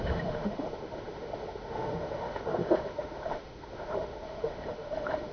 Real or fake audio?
fake